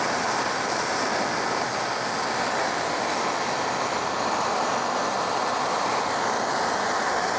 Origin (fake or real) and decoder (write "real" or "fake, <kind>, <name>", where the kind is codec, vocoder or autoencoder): real